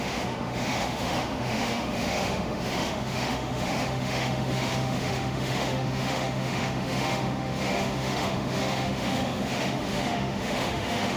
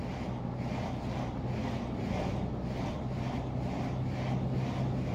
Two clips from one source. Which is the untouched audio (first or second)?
second